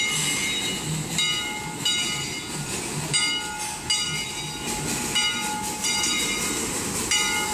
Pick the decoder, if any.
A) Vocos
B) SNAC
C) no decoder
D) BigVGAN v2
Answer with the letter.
C